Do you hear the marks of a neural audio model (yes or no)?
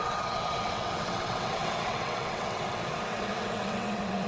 yes